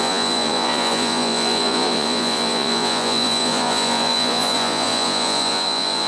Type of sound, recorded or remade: remade